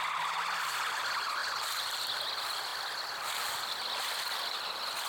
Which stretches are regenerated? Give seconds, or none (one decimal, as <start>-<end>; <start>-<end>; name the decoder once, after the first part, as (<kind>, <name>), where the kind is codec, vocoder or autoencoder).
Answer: none